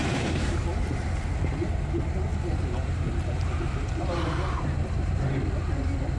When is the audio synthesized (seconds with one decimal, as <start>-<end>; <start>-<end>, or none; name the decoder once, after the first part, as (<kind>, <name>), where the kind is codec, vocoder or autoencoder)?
0.0-1.6 (vocoder, BigVGAN v2); 2.3-5.3